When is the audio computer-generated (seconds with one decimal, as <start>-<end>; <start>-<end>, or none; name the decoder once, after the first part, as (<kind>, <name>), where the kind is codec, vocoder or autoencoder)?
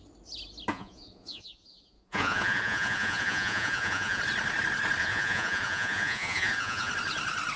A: 0.7-4.2 (vocoder, Vocos); 5.0-6.9